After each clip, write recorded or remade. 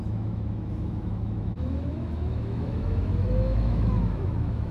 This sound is remade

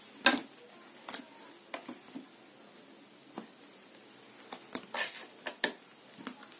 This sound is recorded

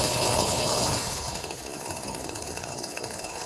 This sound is remade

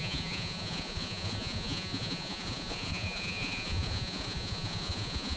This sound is remade